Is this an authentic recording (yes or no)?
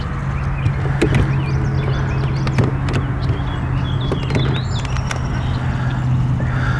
yes